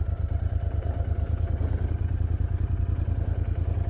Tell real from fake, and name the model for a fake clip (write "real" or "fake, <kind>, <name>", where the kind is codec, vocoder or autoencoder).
real